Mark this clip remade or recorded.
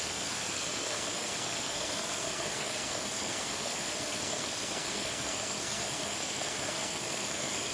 remade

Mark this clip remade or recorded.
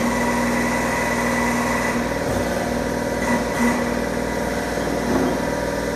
recorded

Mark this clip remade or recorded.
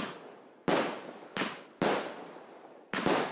recorded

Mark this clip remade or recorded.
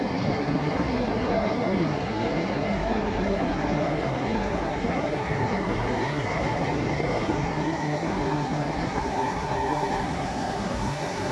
remade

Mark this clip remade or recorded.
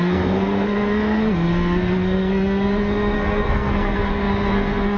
remade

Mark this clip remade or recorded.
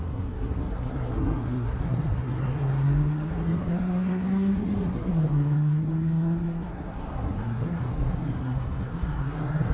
remade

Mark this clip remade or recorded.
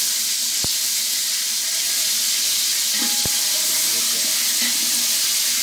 recorded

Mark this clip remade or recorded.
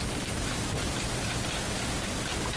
recorded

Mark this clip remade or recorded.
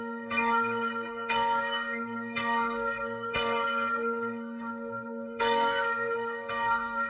remade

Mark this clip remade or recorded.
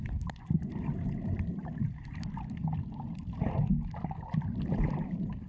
recorded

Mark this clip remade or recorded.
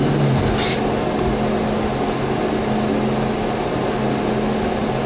recorded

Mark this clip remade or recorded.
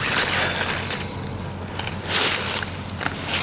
recorded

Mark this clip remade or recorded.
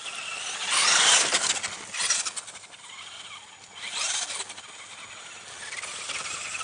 recorded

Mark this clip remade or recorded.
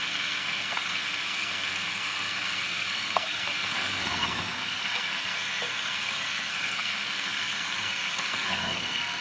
remade